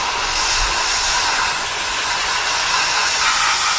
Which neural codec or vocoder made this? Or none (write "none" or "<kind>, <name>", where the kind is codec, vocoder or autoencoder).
vocoder, Vocos